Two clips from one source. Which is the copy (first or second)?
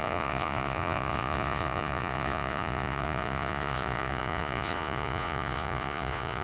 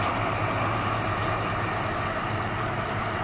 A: first